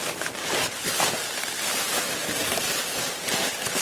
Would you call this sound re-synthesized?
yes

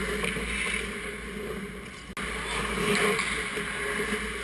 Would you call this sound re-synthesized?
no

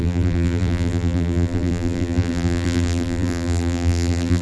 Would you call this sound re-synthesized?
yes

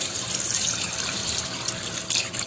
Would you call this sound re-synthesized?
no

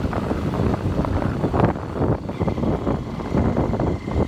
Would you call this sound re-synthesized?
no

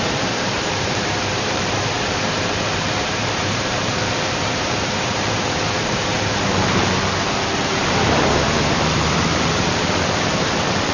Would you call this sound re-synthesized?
yes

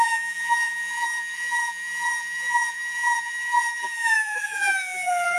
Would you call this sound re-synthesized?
yes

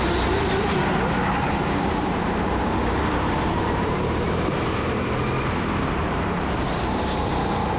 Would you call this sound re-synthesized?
yes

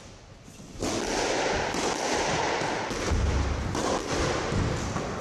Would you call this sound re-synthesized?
no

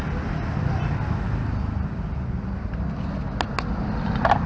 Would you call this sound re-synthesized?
no